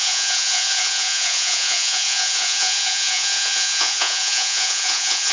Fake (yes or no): yes